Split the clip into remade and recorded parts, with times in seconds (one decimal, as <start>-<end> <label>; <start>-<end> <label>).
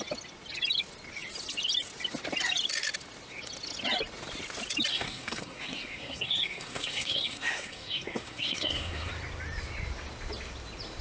0.0-4.9 recorded; 4.9-9.1 remade; 9.1-11.0 recorded